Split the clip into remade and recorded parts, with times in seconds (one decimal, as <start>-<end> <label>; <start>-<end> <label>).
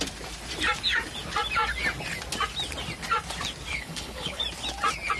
0.0-3.7 recorded; 3.7-4.4 remade; 4.4-5.2 recorded